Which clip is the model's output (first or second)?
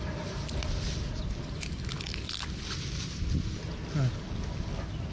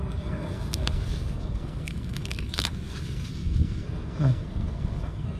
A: second